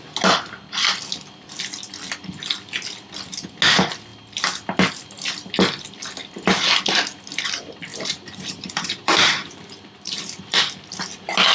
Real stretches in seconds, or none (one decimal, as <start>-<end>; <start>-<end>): 0.0-7.9; 10.6-11.5